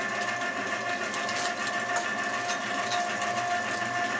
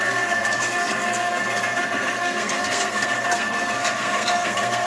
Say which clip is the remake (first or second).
second